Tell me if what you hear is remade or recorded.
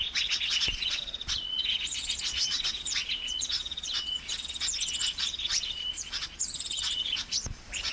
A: remade